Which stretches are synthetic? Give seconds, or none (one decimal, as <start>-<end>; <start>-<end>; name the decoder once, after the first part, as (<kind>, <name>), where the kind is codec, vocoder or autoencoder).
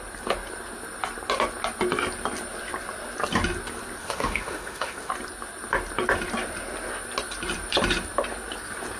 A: 4.0-5.1 (autoencoder, DAC-VAE)